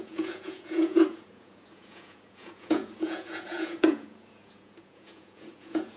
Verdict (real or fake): fake